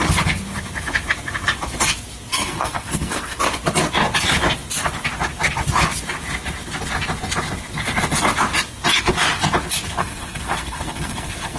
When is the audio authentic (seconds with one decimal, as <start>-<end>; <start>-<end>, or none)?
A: 0.0-2.3; 3.4-10.0